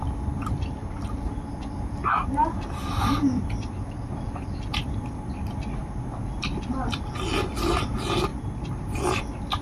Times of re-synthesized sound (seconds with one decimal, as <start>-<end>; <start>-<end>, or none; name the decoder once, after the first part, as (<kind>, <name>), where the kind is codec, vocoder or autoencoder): 0.0-8.3 (vocoder, BigVGAN v2); 9.2-9.6